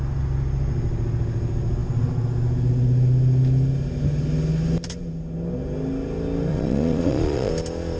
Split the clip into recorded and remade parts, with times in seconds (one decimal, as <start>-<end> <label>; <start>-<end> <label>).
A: 0.0-6.5 recorded; 6.5-7.5 remade; 7.5-8.0 recorded